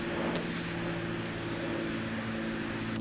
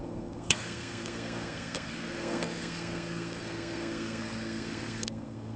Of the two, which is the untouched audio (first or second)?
first